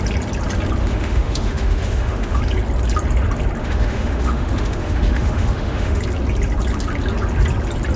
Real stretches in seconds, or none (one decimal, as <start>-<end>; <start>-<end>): 0.0-0.8; 2.4-3.6; 6.0-8.0